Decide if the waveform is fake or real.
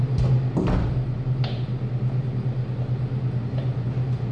real